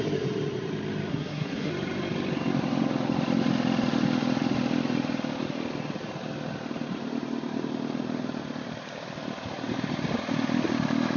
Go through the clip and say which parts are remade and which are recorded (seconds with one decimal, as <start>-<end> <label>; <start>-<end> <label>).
0.0-1.1 recorded; 1.1-1.7 remade; 1.7-11.2 recorded